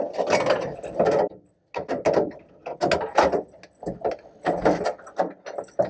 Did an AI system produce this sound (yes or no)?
no